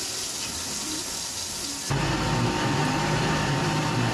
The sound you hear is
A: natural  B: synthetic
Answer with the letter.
A